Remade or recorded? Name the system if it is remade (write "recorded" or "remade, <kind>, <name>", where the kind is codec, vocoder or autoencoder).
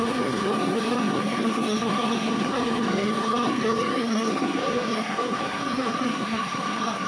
remade, codec, SNAC